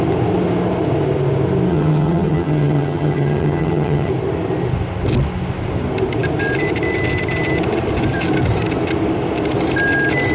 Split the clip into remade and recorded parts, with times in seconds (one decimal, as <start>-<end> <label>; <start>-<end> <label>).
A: 0.0-1.7 recorded; 1.7-4.1 remade; 4.1-10.3 recorded